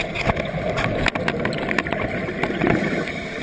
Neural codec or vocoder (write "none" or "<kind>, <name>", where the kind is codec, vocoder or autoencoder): none